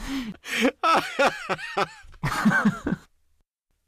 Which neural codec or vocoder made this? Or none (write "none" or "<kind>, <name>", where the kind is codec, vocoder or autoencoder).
none